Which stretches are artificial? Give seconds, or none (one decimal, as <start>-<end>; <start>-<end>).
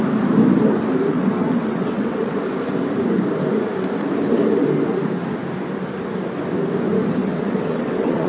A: 1.1-2.4; 7.2-8.3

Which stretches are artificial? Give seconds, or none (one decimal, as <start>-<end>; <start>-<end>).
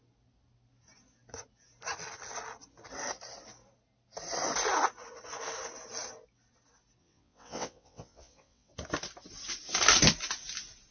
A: 7.0-8.7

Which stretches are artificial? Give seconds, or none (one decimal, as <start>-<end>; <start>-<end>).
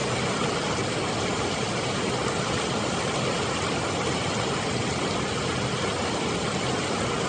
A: none